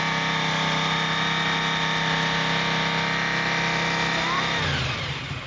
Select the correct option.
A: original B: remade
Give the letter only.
A